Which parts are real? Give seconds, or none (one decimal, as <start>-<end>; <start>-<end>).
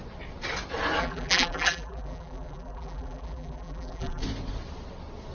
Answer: 0.0-1.0; 4.2-5.3